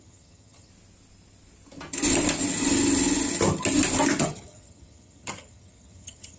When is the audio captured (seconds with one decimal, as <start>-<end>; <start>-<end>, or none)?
0.7-4.2